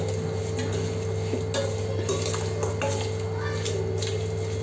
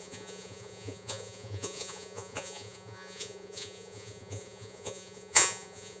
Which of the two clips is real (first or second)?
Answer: first